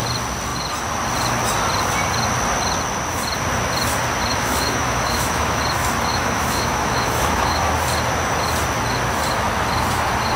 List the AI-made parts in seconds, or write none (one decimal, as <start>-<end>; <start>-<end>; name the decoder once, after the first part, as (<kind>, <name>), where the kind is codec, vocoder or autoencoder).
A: 4.3-5.6 (autoencoder, DAC-VAE); 6.1-7.7